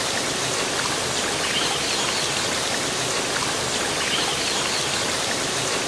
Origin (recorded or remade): recorded